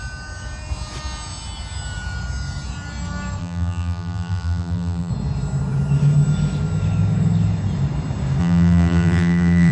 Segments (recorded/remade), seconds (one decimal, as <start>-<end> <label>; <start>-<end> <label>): 0.0-3.4 recorded; 3.4-5.1 remade; 5.1-8.4 recorded; 8.4-9.7 remade